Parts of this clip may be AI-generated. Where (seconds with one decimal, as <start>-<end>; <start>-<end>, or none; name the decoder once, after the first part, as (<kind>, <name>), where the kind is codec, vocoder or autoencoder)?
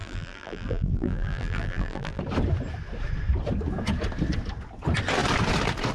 0.0-2.2 (vocoder, BigVGAN v2)